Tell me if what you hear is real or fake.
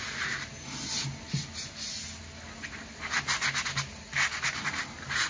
real